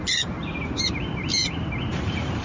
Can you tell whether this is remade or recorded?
remade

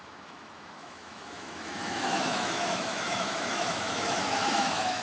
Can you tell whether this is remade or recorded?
remade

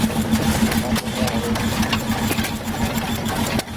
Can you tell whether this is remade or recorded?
recorded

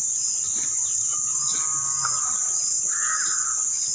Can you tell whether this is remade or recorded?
recorded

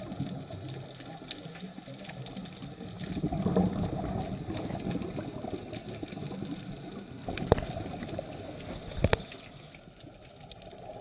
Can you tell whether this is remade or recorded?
recorded